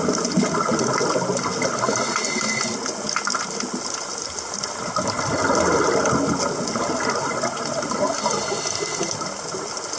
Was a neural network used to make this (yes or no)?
no